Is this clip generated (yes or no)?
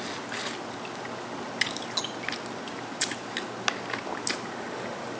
no